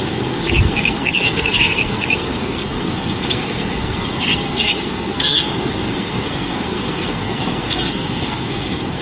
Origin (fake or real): fake